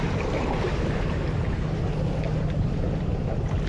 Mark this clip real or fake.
real